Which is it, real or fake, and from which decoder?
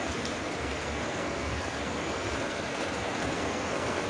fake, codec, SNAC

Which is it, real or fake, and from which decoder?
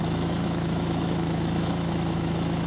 fake, autoencoder, DAC-VAE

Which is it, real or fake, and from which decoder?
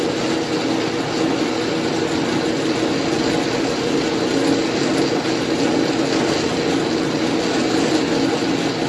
real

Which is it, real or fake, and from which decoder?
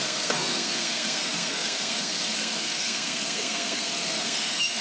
fake, codec, SNAC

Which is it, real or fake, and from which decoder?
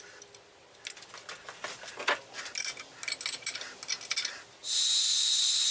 real